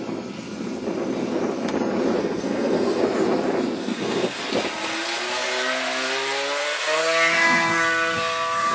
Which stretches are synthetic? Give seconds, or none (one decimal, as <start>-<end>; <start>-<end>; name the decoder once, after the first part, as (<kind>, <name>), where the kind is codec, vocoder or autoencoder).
2.2-3.0 (codec, SNAC); 3.8-4.4; 6.6-8.7